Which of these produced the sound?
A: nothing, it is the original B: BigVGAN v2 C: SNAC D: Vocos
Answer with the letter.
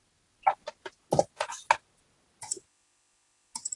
A